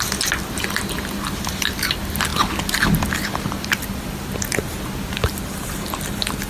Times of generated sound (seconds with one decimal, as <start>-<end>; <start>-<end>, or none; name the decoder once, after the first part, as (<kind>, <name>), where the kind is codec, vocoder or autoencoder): none